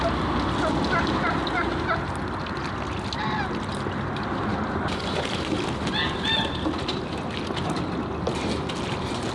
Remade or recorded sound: recorded